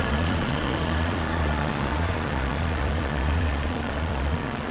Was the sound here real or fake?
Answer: fake